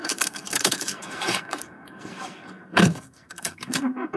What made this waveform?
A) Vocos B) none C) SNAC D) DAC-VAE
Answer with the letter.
C